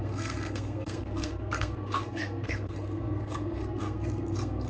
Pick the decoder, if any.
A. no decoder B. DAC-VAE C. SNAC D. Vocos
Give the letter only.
C